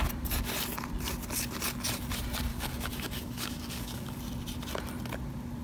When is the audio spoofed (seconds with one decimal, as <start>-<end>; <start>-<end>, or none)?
2.5-4.2